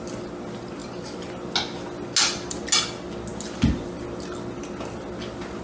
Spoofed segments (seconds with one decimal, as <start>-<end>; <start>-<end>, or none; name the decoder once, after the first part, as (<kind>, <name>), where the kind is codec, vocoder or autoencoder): none